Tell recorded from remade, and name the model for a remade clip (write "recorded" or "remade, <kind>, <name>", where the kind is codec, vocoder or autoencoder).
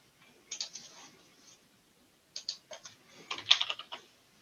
recorded